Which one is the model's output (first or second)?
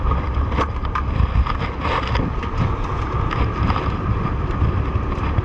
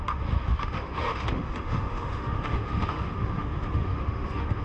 second